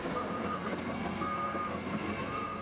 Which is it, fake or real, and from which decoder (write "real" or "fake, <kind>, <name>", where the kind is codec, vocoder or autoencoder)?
fake, codec, SNAC